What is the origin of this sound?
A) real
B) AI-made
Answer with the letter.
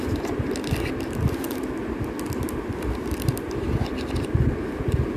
A